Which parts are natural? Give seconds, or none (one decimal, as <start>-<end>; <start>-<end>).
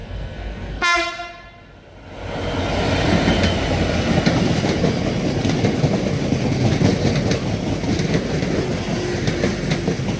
1.0-10.2